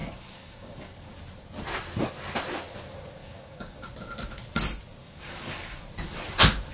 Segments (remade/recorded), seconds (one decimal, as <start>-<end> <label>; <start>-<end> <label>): 0.0-1.1 remade; 1.1-3.2 recorded; 3.2-3.9 remade; 3.9-5.0 recorded; 5.0-5.8 remade; 5.8-6.7 recorded